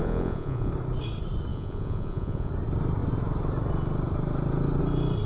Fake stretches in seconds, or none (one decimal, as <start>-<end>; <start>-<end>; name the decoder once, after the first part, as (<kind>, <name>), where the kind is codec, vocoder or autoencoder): 0.0-0.7 (vocoder, Vocos); 1.5-2.5

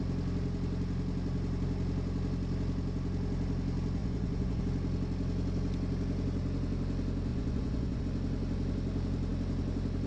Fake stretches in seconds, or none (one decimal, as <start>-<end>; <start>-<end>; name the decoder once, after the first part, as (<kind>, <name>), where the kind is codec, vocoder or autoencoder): 4.0-4.6 (vocoder, Vocos); 7.3-8.0

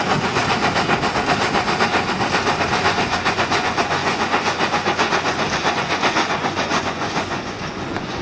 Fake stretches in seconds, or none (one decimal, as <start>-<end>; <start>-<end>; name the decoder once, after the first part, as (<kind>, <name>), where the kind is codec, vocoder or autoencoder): 0.0-0.4 (vocoder, Vocos); 2.7-8.2